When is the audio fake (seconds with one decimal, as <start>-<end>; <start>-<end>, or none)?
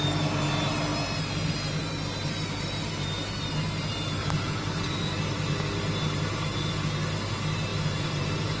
4.2-6.7; 7.7-8.6